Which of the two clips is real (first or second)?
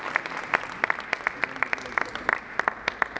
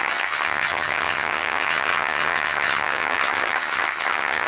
first